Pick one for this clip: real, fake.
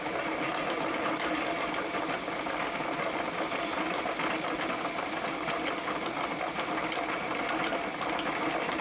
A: real